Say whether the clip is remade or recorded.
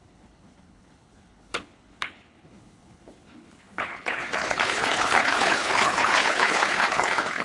remade